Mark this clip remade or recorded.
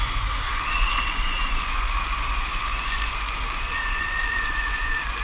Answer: remade